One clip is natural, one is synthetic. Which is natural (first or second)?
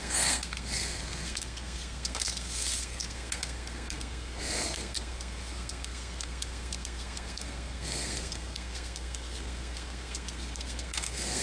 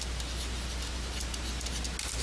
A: second